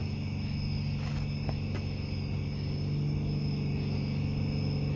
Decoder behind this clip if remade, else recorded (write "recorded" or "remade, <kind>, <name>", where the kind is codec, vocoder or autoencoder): recorded